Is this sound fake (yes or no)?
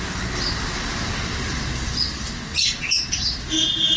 no